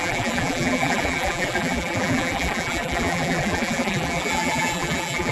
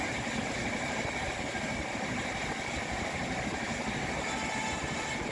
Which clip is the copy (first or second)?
first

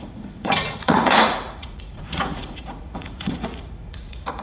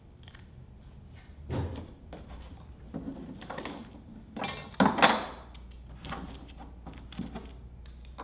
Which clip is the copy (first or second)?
first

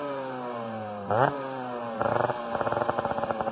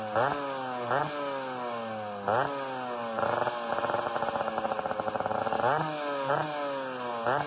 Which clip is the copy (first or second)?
first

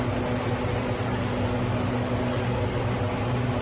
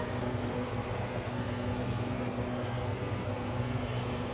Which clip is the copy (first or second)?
second